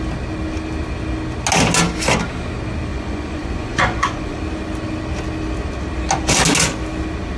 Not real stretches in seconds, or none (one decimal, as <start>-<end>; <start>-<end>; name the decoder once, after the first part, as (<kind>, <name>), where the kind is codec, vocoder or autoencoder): 2.9-4.4 (vocoder, Vocos)